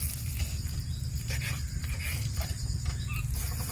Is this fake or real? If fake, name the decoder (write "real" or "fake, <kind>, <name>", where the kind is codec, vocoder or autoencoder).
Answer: real